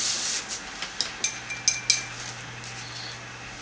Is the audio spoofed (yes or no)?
no